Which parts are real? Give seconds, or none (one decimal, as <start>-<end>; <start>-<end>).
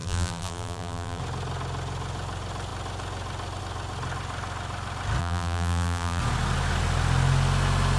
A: 1.2-5.2; 6.2-8.0